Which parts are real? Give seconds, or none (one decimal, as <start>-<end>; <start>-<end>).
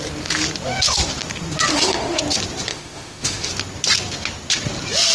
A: 0.0-1.7; 2.2-2.7; 3.5-5.1